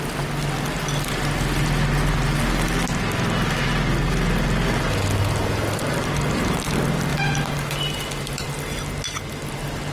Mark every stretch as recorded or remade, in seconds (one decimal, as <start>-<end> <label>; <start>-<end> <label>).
0.0-9.9 recorded